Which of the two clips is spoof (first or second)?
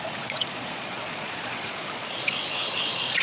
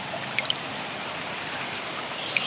first